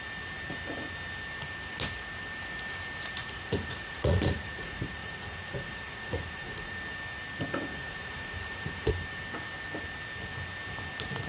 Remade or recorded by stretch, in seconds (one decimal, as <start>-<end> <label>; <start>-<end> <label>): 0.0-3.2 recorded; 3.2-6.8 remade; 6.8-7.7 recorded; 7.7-8.9 remade; 8.9-11.3 recorded